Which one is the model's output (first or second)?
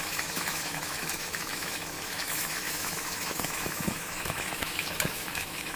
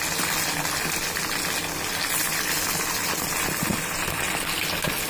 first